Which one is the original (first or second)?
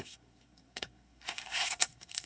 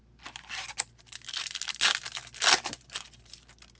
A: second